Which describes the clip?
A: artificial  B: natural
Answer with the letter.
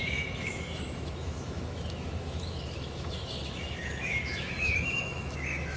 A